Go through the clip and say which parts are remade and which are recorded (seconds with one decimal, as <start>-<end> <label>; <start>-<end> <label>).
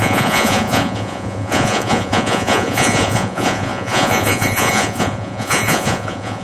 0.0-6.4 remade